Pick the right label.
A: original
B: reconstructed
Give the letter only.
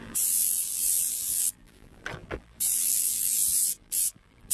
B